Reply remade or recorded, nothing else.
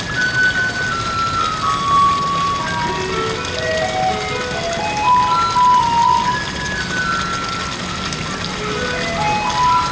recorded